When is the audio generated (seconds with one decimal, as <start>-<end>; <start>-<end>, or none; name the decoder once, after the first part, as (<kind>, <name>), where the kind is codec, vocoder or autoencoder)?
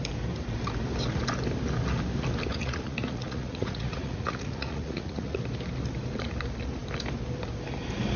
2.5-5.4 (vocoder, Vocos)